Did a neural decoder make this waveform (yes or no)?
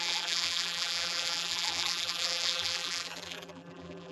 yes